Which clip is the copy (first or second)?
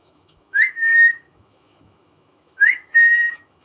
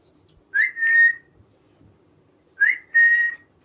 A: first